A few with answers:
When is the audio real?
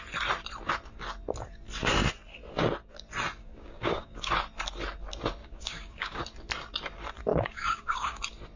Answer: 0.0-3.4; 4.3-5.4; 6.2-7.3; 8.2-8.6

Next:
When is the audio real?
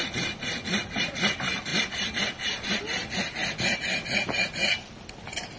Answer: 0.0-5.6